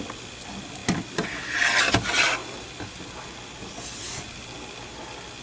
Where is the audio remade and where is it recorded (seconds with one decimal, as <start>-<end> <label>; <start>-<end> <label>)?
0.0-5.4 recorded